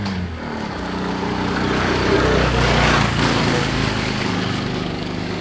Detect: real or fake fake